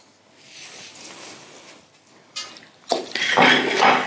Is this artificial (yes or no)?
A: no